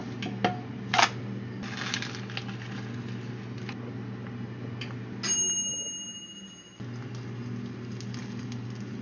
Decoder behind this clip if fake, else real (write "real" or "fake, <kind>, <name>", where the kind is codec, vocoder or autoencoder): real